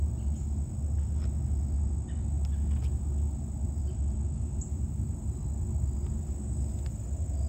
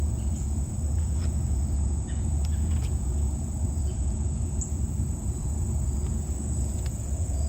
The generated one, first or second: second